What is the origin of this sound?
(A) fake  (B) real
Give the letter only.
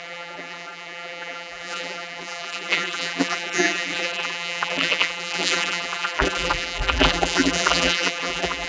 A